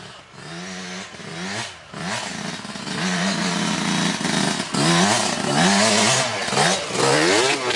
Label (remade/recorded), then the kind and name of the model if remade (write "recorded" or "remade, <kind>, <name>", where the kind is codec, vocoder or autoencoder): recorded